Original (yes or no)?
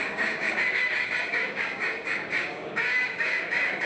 no